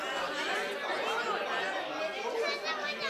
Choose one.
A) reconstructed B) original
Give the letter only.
B